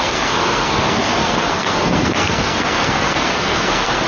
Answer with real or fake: fake